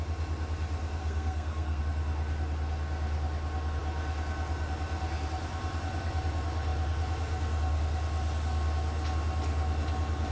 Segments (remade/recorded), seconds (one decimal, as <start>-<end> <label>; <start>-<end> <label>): 0.0-1.0 recorded; 1.0-1.8 remade; 1.8-10.3 recorded